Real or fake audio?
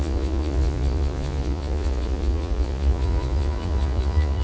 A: fake